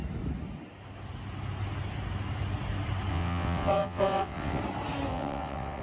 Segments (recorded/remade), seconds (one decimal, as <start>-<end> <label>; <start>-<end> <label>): 0.0-3.1 recorded; 3.1-4.6 remade; 4.6-5.1 recorded; 5.1-5.8 remade